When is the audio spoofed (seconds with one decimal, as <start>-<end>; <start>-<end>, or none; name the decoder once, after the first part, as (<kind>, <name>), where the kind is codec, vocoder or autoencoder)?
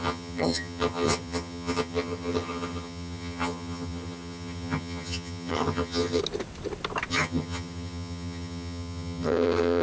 0.0-6.2 (vocoder, HiFi-GAN); 7.1-9.8